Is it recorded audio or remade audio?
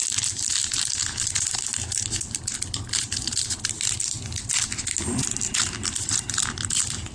recorded